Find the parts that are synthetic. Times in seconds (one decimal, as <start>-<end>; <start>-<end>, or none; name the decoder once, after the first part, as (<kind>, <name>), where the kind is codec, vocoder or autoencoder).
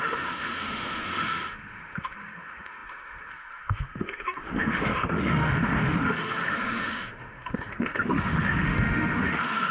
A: 0.0-9.7 (autoencoder, DAC-VAE)